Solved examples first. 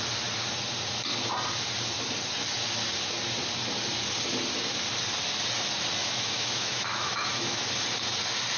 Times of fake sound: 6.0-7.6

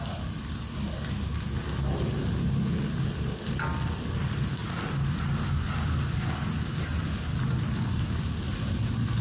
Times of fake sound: none

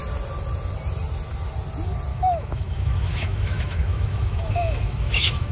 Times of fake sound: 2.1-5.5

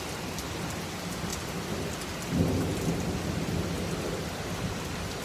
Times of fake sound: none

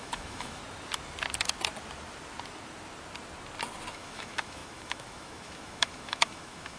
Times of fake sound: 0.0-0.6; 3.9-6.8

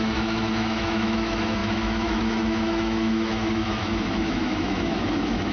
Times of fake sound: 0.0-5.5

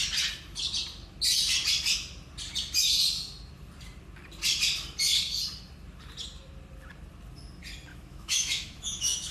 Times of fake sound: 7.9-9.3